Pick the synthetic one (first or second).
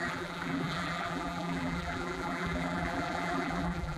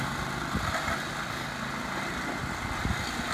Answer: first